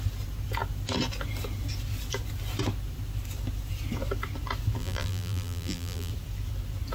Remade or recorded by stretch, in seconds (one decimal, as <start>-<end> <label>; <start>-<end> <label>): 0.0-4.8 recorded; 4.8-6.1 remade; 6.1-6.9 recorded